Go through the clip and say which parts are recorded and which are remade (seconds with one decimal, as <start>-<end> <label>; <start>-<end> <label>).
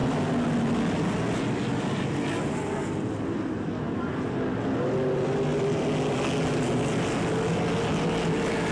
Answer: 0.0-8.7 recorded